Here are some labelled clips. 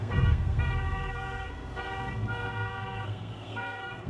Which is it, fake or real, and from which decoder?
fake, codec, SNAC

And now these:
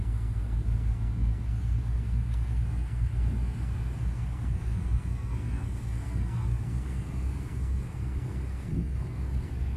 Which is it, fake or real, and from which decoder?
fake, codec, SNAC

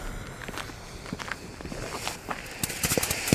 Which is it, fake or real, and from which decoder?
real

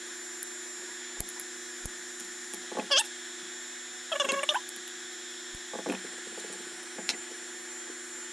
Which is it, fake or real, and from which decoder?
real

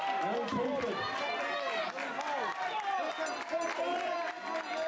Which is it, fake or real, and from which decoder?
real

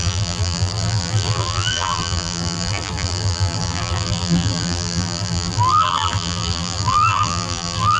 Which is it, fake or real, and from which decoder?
fake, vocoder, BigVGAN v2